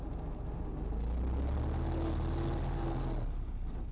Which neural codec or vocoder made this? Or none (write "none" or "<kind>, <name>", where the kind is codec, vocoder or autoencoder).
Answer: none